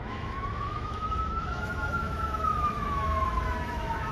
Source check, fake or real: fake